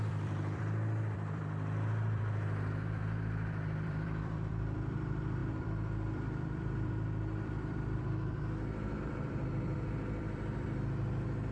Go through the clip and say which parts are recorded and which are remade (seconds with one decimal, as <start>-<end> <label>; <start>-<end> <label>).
0.0-11.5 remade